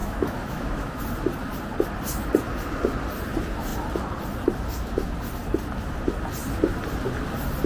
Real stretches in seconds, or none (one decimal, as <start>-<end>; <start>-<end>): 1.0-7.7